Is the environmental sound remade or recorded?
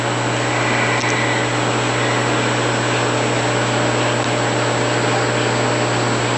recorded